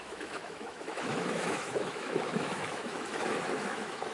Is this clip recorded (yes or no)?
no